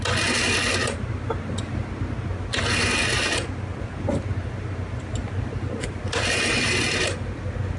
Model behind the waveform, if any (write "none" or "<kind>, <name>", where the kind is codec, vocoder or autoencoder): none